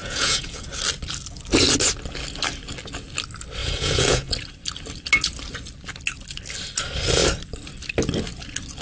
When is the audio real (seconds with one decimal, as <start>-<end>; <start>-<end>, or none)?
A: 0.7-3.6; 4.3-8.8